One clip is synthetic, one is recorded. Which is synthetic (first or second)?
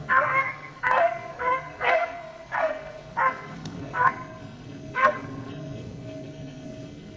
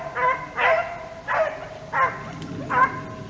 first